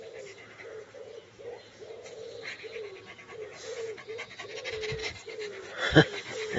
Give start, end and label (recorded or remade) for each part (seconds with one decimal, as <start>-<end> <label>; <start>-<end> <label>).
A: 0.0-0.7 recorded; 0.7-4.6 remade; 4.6-6.6 recorded